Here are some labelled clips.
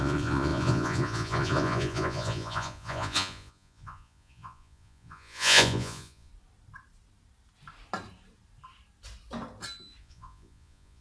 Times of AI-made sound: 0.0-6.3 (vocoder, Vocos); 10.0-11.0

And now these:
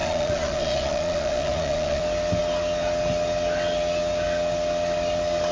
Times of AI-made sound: 0.0-2.0 (vocoder, Vocos)

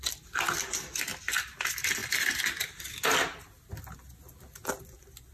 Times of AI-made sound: none

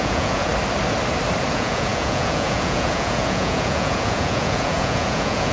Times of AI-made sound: 0.0-0.5 (vocoder, Vocos); 1.5-5.5

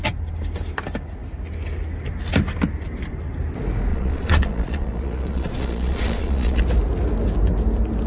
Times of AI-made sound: 3.9-6.6 (vocoder, Vocos)

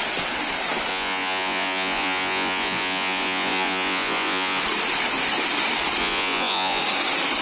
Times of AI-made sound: 0.9-4.6 (vocoder, Vocos); 6.0-6.8

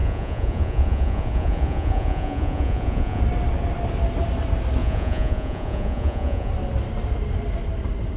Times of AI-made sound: 0.0-3.2 (vocoder, Vocos); 4.8-6.5